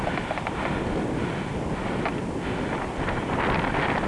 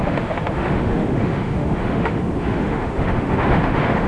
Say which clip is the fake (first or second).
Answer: second